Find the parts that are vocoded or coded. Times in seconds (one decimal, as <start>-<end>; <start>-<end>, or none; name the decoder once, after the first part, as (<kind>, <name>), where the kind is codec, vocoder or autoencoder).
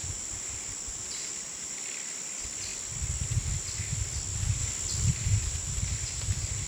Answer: none